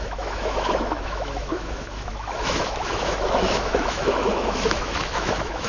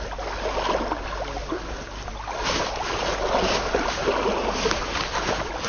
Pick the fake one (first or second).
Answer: first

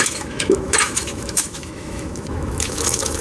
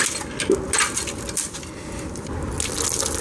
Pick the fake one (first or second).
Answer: first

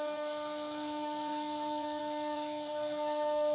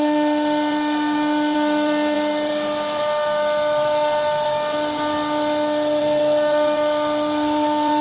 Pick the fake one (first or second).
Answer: first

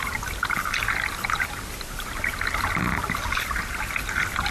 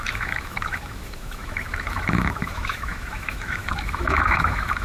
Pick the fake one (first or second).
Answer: second